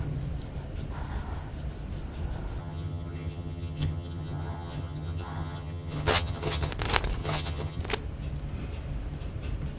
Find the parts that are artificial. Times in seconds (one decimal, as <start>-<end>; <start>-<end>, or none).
2.6-6.7; 7.2-7.8